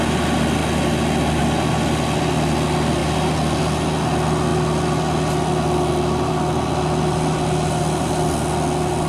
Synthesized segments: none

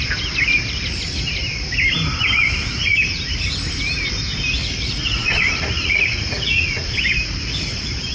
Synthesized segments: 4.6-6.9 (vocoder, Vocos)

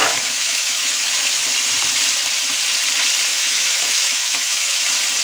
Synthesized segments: 0.0-1.4 (autoencoder, DAC-VAE); 3.3-4.8

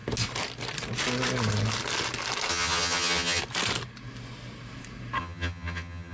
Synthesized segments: 2.5-3.4 (vocoder, HiFi-GAN); 5.2-6.1